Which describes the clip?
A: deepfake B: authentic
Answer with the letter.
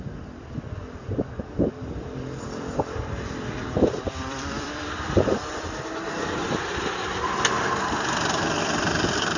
A